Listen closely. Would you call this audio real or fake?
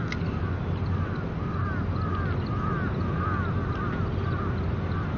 real